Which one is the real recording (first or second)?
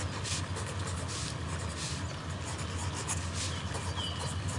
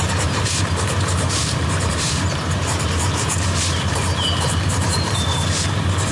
first